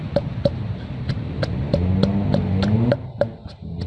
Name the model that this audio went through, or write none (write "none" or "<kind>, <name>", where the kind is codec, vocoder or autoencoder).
none